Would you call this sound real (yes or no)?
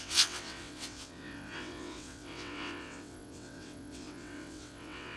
no